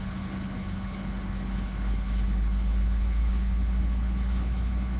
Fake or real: fake